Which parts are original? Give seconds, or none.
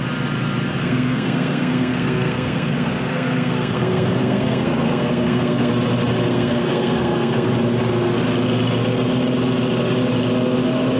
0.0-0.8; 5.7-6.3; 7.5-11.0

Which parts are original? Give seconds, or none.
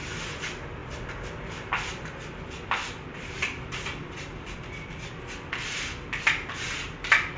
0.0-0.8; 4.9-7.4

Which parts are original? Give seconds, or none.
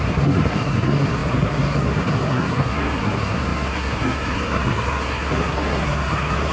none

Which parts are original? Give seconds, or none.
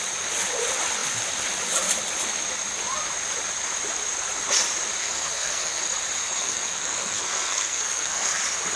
0.0-5.0; 5.8-6.2; 8.4-8.8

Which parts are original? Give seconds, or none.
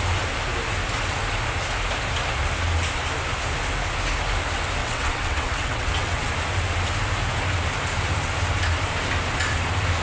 0.0-4.8; 6.3-10.0